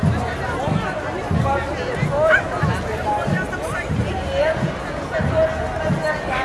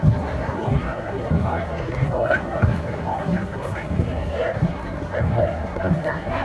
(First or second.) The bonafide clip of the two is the first